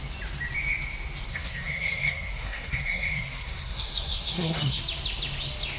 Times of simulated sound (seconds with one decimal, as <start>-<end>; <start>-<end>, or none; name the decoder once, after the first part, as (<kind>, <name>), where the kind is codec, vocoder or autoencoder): 1.3-4.8 (codec, SNAC)